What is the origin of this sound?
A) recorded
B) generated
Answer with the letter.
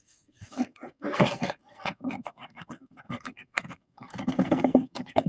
B